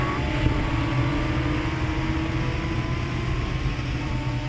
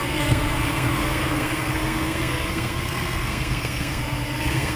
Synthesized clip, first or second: second